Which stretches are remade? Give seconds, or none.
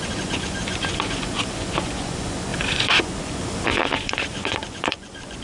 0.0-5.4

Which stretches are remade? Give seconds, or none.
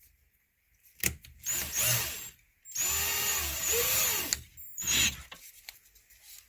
none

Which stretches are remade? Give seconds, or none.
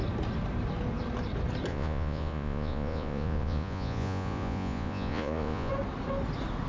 1.7-5.7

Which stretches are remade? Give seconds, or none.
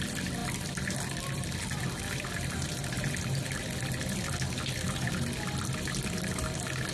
0.0-6.9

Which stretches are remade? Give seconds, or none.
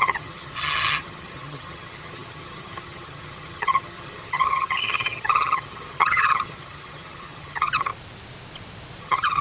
0.0-7.9; 9.0-9.4